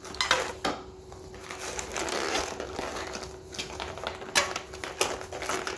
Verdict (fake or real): real